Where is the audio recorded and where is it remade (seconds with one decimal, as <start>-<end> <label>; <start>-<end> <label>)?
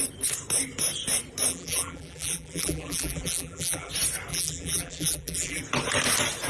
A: 0.0-1.5 recorded; 1.5-3.9 remade; 3.9-4.3 recorded; 4.3-5.6 remade; 5.6-6.5 recorded